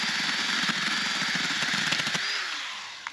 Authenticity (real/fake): real